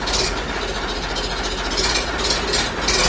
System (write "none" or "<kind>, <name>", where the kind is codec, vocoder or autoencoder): none